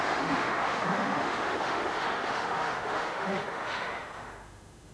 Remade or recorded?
remade